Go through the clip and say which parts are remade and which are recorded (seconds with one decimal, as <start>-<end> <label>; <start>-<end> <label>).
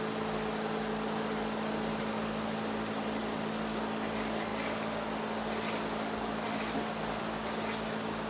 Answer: 0.0-8.3 recorded